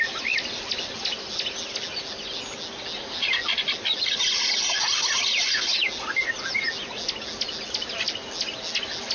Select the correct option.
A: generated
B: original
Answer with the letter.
B